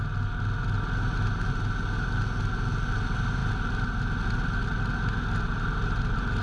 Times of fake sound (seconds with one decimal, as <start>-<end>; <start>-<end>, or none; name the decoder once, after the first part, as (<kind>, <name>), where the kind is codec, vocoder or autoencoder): none